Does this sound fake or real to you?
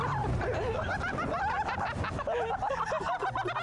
real